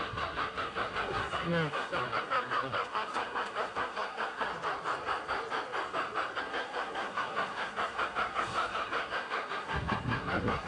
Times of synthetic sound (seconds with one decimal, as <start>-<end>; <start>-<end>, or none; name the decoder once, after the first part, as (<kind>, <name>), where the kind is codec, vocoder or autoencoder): 0.0-4.5 (codec, SNAC); 6.4-10.7